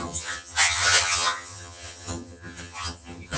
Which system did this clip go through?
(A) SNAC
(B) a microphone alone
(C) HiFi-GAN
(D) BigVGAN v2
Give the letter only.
C